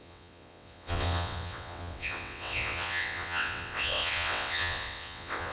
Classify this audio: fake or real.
fake